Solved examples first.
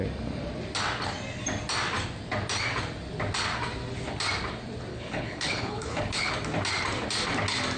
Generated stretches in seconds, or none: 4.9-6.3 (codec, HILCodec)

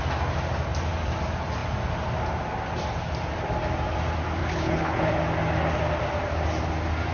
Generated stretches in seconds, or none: 4.4-5.1 (codec, HILCodec)

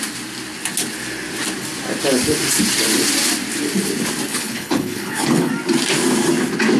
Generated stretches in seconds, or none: 4.3-5.5 (codec, HILCodec)

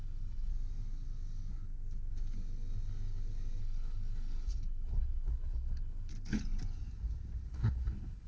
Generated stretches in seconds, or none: 0.0-0.5 (codec, HILCodec); 3.6-6.1; 7.5-8.3